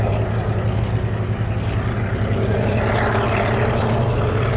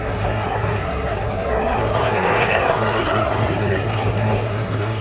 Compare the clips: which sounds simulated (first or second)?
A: second